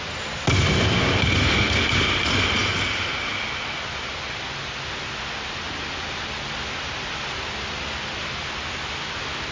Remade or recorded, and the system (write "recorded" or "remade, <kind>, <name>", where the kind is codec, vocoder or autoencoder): recorded